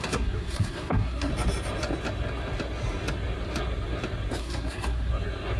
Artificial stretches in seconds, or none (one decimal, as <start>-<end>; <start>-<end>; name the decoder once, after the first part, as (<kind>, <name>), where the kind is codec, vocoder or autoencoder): 0.0-1.3 (codec, SNAC); 4.4-5.1